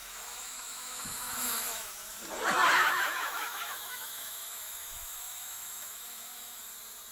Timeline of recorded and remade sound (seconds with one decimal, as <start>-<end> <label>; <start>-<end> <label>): 0.0-2.2 remade; 2.2-2.8 recorded; 2.8-6.6 remade; 6.6-7.1 recorded